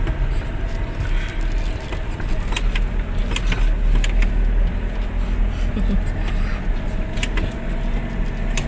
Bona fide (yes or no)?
yes